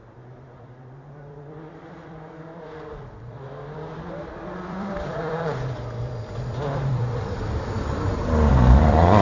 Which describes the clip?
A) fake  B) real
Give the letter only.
A